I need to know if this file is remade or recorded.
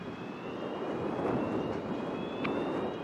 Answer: recorded